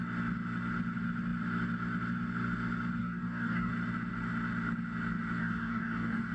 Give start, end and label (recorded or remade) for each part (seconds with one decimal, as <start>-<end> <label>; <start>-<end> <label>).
0.0-3.0 recorded; 3.0-3.7 remade; 3.7-5.4 recorded; 5.4-6.3 remade